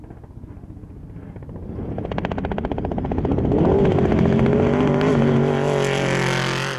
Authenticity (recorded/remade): recorded